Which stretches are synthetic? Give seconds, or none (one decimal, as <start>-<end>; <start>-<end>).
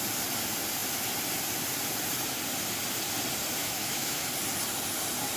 3.6-4.3